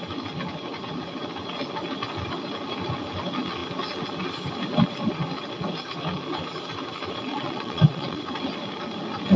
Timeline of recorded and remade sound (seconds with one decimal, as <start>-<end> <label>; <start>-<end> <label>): 0.0-7.3 recorded; 7.3-8.2 remade; 8.2-9.4 recorded